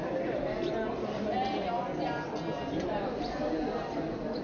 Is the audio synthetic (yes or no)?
no